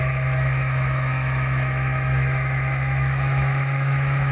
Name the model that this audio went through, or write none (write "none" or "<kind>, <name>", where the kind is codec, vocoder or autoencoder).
autoencoder, DAC-VAE